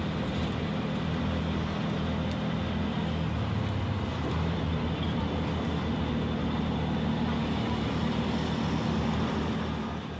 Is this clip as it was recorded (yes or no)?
yes